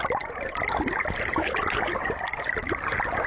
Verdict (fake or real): real